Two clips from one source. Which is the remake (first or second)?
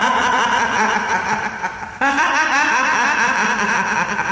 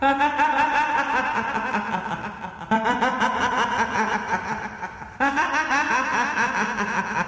first